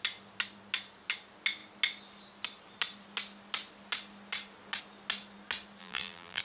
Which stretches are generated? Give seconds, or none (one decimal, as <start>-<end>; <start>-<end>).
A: 5.8-6.4